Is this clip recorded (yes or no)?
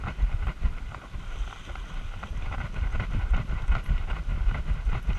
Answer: yes